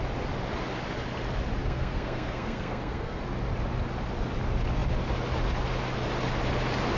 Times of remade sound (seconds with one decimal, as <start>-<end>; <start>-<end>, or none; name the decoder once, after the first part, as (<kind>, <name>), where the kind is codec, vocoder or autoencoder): 1.6-3.2 (codec, SNAC)